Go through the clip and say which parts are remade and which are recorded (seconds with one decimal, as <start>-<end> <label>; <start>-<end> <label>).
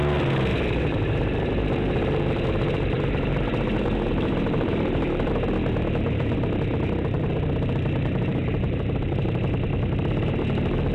0.0-0.5 recorded; 0.5-5.3 remade; 5.3-8.3 recorded; 8.3-9.4 remade; 9.4-10.9 recorded